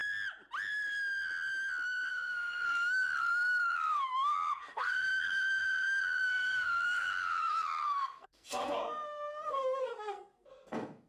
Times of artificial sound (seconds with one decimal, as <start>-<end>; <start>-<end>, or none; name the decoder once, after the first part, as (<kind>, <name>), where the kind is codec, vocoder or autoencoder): 2.1-11.1 (codec, SNAC)